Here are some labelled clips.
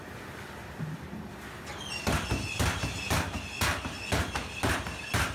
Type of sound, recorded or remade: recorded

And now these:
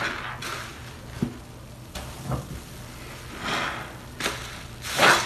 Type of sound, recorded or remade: recorded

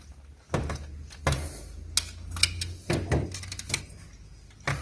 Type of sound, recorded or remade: recorded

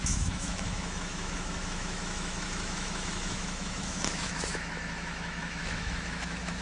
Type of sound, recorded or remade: remade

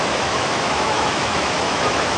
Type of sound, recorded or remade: remade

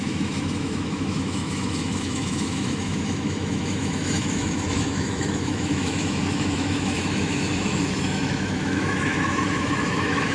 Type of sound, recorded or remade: remade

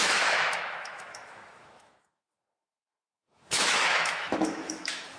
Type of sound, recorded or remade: remade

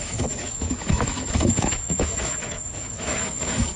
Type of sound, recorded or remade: remade